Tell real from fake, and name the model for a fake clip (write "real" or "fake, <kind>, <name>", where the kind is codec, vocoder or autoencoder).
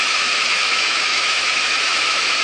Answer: fake, autoencoder, DAC-VAE